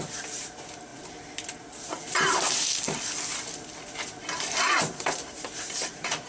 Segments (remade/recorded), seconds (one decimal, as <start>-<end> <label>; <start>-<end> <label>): 0.0-0.9 remade; 0.9-4.7 recorded; 4.7-6.3 remade